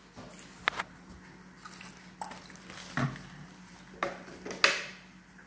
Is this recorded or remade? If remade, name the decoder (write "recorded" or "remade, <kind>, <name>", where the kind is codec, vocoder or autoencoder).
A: recorded